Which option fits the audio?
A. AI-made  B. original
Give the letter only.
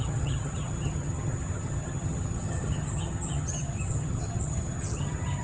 A